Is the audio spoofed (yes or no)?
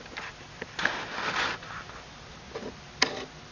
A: no